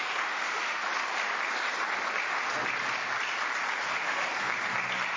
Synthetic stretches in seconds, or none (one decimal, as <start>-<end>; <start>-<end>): 0.0-0.8; 3.9-4.3